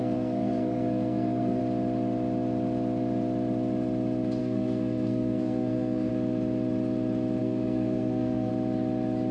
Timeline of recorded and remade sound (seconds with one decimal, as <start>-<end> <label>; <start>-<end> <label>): 0.0-1.6 remade; 1.6-4.4 recorded; 4.4-6.1 remade; 6.1-7.4 recorded; 7.4-8.5 remade; 8.5-9.3 recorded